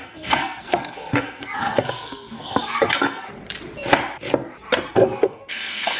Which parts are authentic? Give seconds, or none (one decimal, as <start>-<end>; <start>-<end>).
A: 3.3-4.9